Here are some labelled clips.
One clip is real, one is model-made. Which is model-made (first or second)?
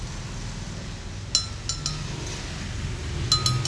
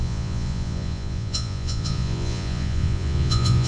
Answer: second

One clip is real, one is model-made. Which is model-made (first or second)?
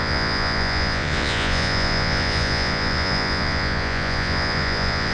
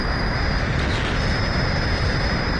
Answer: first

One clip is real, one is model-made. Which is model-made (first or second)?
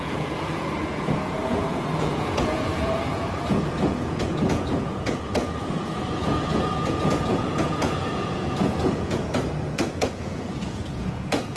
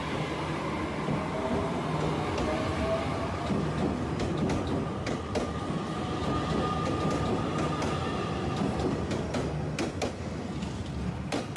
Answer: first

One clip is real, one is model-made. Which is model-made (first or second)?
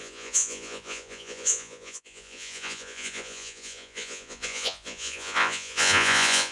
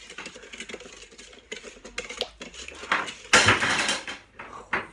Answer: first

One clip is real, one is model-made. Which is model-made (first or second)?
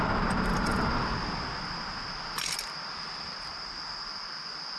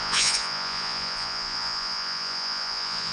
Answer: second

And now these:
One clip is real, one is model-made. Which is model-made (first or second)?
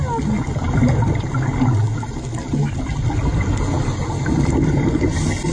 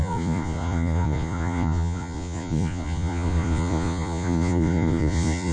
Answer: second